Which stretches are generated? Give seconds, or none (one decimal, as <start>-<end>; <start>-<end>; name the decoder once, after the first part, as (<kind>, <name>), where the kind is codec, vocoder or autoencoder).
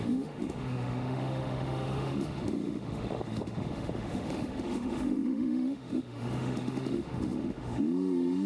0.0-8.5 (autoencoder, DAC-VAE)